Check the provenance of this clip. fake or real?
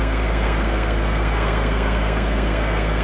fake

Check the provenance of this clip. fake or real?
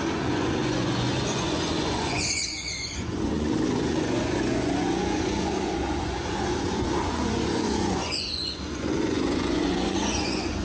fake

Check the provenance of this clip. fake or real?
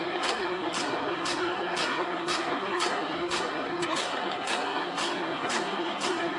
fake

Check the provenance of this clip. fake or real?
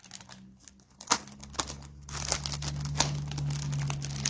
real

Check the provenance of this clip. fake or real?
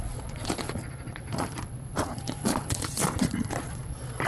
fake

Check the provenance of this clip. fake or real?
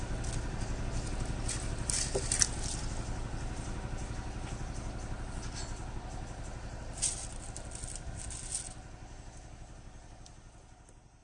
real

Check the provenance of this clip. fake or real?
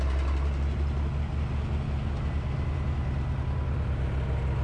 real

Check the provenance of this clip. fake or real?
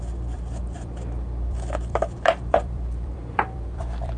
fake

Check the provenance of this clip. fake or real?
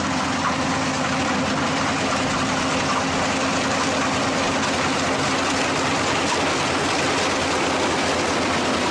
real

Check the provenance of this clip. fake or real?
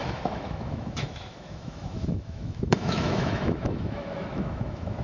fake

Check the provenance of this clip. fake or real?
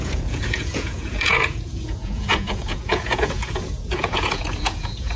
fake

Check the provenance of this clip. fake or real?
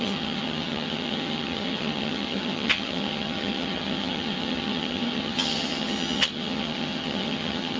fake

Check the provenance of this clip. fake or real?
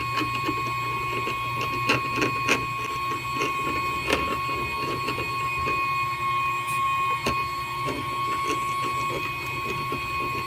real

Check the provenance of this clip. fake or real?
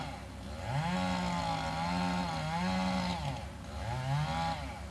real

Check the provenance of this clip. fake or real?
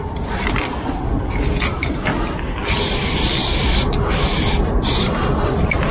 real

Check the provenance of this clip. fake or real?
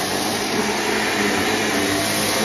real